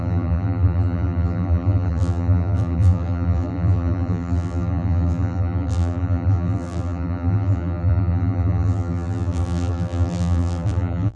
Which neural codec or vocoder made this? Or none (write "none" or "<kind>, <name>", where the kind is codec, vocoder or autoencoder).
vocoder, BigVGAN v2